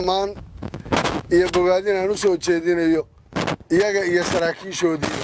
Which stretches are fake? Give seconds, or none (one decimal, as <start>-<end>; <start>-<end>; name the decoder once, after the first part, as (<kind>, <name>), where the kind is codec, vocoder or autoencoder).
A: 0.0-3.0 (autoencoder, DAC-VAE)